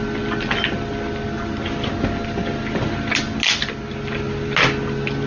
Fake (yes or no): no